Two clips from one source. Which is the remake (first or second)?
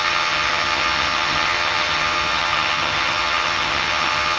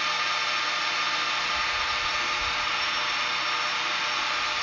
first